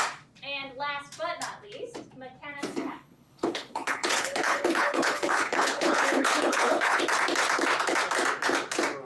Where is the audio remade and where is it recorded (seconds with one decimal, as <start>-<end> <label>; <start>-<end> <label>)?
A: 0.0-2.7 recorded; 2.7-7.0 remade; 7.0-9.0 recorded